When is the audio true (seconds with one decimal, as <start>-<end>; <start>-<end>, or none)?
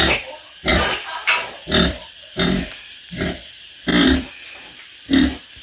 0.0-0.7; 3.4-3.9; 4.6-5.6